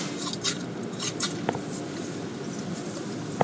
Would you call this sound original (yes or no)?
yes